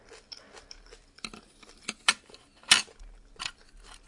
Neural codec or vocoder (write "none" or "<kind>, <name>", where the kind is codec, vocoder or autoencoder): none